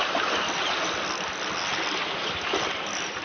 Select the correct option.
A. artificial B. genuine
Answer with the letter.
B